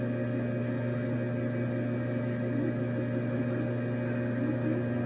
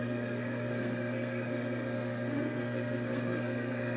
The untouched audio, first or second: first